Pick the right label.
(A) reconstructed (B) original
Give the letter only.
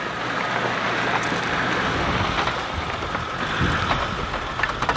B